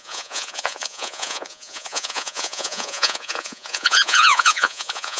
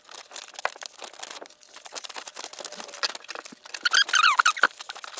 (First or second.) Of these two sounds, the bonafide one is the second